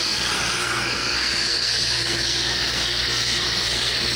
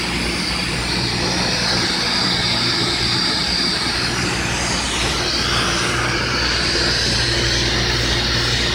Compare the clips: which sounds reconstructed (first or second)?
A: first